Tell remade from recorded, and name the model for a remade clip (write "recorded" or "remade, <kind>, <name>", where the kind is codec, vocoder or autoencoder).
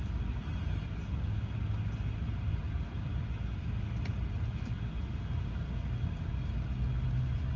recorded